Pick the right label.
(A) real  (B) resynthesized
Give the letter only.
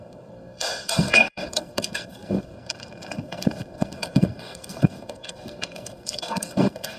B